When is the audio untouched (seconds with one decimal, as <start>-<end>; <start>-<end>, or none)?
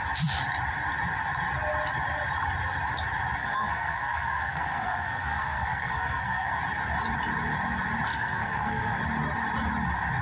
0.0-3.4; 6.6-8.1; 9.0-10.2